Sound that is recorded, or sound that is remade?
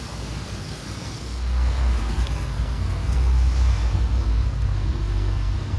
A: remade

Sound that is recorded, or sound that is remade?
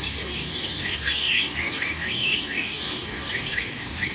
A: remade